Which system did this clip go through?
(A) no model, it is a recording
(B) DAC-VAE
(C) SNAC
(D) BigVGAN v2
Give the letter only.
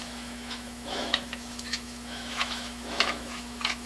B